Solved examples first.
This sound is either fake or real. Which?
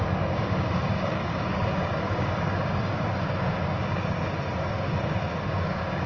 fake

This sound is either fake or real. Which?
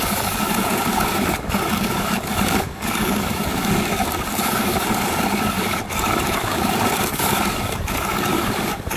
fake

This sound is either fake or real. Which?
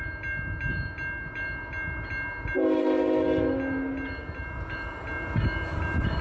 real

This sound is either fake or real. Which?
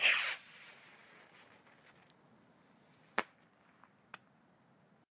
real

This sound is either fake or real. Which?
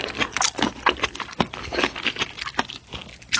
real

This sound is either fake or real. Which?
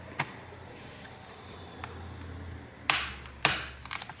real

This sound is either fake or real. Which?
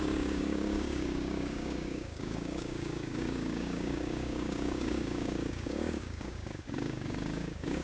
fake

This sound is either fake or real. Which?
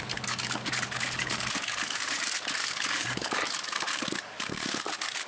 fake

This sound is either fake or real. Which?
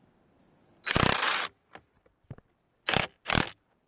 real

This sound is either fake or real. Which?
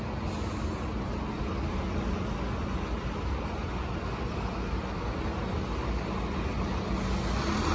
real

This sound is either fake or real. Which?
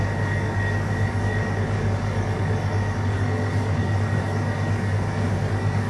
fake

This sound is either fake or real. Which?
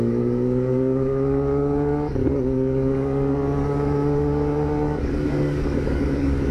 fake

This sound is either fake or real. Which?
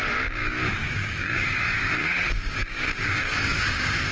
fake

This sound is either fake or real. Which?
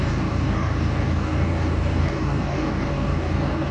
fake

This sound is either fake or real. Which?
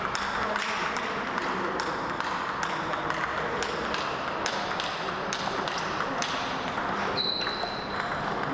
real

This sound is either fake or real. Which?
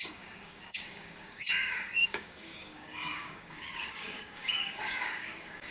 fake